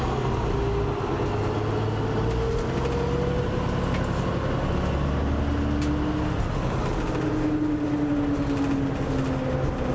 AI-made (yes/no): no